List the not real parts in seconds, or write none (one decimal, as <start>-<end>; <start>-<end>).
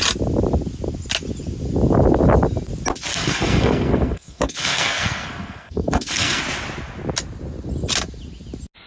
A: 3.1-6.4